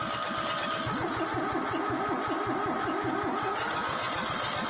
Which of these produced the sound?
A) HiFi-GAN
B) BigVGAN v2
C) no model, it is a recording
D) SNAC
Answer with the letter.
C